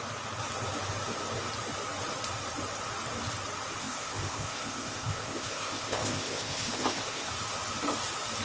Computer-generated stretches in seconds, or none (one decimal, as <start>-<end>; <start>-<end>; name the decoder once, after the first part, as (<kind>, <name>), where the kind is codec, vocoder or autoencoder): 3.8-7.3 (codec, ZipCodec)